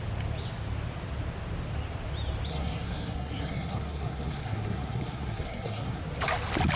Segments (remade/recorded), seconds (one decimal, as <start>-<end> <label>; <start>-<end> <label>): 0.0-2.5 recorded; 2.5-6.0 remade; 6.0-6.8 recorded